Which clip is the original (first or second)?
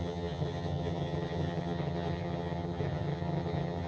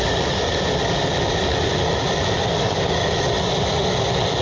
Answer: second